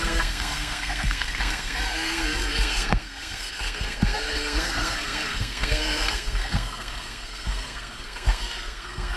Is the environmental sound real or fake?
fake